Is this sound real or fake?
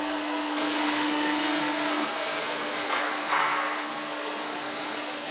fake